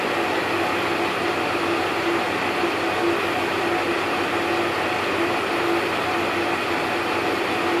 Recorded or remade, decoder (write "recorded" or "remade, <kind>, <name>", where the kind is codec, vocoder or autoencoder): recorded